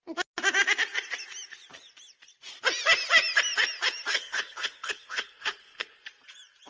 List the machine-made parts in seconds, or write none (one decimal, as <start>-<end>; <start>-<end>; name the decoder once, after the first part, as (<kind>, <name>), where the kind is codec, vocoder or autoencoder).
4.1-6.0 (codec, HILCodec)